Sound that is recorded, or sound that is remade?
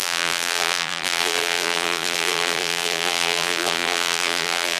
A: remade